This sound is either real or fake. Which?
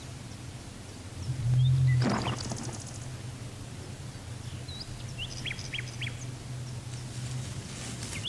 real